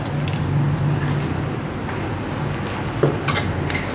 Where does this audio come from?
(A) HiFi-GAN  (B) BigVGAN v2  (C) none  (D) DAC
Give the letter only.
C